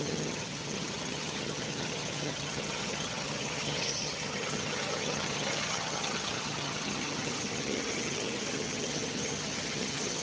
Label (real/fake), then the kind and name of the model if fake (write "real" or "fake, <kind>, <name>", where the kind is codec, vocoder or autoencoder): fake, vocoder, HiFi-GAN